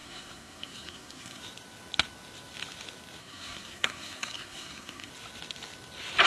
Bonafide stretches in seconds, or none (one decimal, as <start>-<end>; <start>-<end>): 1.4-3.2; 5.1-6.3